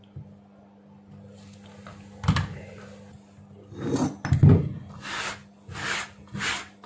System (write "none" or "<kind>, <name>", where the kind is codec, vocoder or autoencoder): none